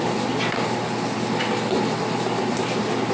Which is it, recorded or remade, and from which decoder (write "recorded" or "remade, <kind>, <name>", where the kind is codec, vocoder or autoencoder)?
recorded